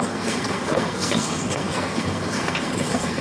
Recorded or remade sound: remade